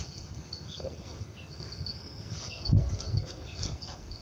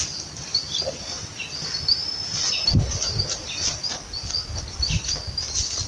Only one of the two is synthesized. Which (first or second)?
first